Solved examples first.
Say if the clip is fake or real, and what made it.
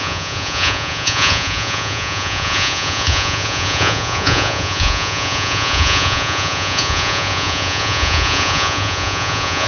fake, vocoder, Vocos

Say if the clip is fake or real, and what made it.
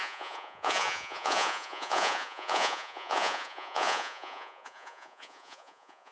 fake, vocoder, Vocos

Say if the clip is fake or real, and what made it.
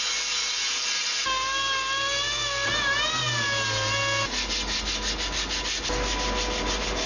real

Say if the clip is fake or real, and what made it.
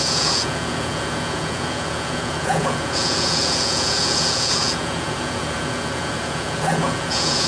fake, vocoder, Vocos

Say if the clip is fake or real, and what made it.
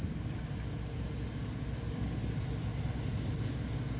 real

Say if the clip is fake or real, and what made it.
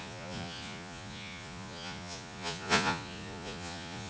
fake, vocoder, Vocos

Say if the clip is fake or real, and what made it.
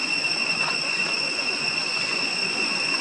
fake, vocoder, Vocos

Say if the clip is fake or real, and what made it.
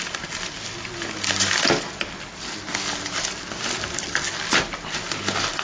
real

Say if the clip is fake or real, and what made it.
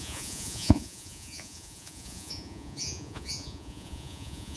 fake, vocoder, Vocos